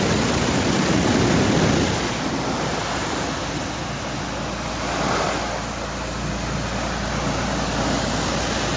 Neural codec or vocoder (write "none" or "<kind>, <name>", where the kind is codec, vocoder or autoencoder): none